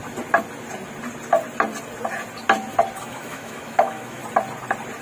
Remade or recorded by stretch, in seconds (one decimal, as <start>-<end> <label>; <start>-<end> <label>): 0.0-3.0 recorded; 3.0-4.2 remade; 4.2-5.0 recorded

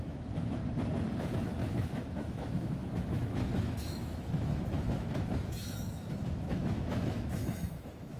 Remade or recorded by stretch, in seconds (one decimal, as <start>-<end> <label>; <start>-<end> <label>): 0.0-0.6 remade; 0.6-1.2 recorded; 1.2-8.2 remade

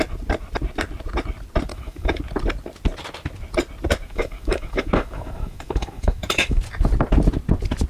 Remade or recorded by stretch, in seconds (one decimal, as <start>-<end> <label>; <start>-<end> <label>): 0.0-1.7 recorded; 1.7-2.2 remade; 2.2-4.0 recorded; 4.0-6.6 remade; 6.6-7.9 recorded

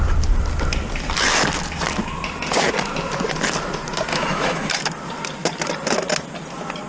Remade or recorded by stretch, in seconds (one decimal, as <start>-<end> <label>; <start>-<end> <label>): 0.0-4.1 recorded; 4.1-4.7 remade; 4.7-6.9 recorded